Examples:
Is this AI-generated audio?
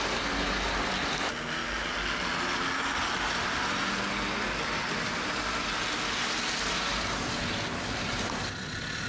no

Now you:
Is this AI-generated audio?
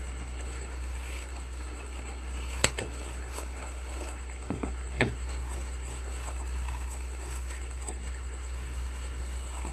yes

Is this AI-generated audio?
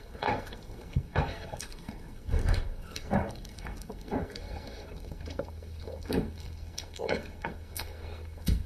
yes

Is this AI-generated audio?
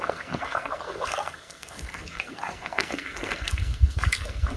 yes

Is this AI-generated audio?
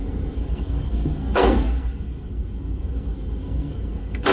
yes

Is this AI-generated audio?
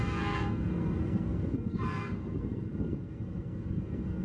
yes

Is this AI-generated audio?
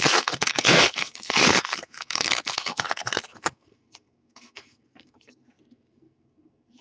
yes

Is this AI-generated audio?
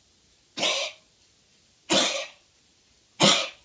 no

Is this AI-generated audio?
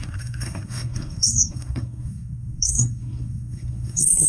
yes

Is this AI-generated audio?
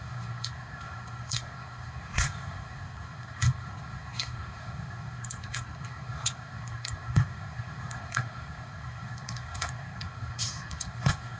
yes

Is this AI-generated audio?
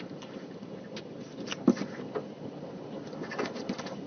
no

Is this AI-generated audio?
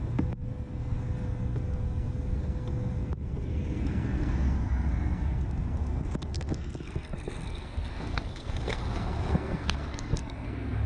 yes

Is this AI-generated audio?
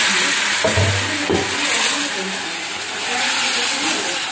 no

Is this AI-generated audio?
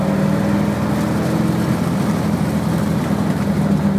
no